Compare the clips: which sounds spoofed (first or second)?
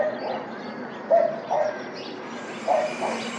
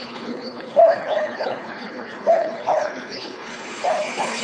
second